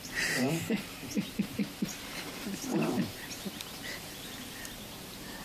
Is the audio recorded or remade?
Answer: remade